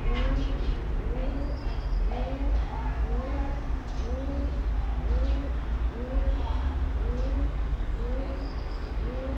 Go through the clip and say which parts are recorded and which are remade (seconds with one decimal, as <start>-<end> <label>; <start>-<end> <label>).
0.0-7.3 recorded; 7.3-9.4 remade

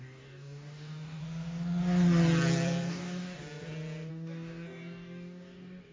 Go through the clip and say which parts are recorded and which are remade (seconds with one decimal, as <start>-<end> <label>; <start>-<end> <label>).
0.0-1.2 remade; 1.2-2.9 recorded; 2.9-3.4 remade; 3.4-4.1 recorded; 4.1-5.9 remade

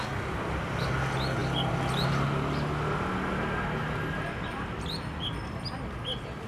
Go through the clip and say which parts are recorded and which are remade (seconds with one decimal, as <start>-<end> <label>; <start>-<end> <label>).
0.0-6.5 recorded

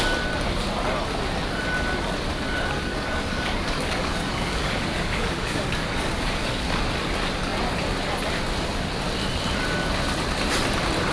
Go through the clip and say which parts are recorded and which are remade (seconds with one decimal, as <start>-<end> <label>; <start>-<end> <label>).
0.0-2.9 recorded; 2.9-6.8 remade; 6.8-11.1 recorded

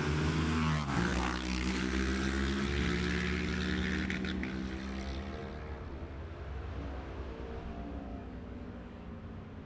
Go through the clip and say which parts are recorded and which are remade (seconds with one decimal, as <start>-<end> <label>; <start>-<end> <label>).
0.0-1.1 recorded; 1.1-1.8 remade; 1.8-8.1 recorded; 8.1-9.2 remade; 9.2-9.7 recorded

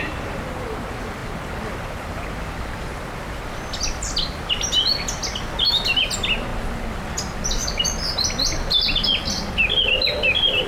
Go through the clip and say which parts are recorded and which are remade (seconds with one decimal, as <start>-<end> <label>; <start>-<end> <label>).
0.0-10.7 recorded